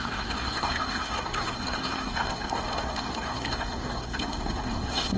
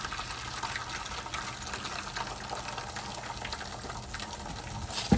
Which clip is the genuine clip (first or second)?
second